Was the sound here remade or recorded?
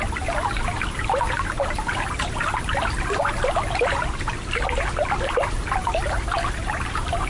recorded